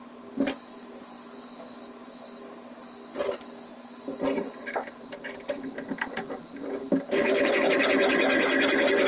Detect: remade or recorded recorded